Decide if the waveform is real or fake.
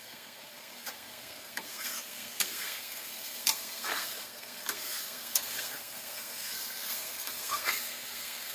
fake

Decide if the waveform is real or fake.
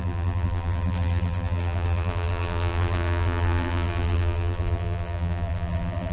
fake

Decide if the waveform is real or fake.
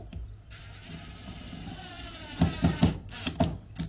real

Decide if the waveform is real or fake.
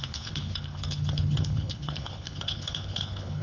fake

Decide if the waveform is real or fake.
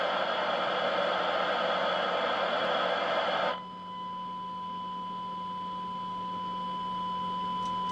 real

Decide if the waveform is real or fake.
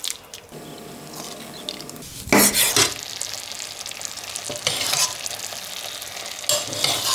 real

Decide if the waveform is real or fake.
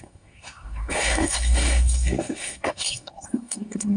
fake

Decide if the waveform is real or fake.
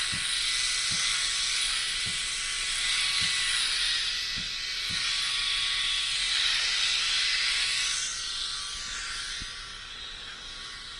real